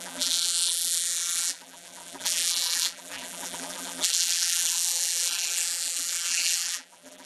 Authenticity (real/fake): fake